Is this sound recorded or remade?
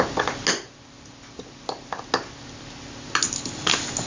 recorded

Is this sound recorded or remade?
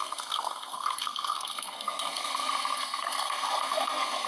remade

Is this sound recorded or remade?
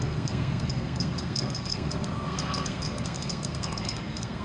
remade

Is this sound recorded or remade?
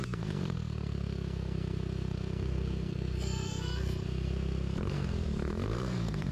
remade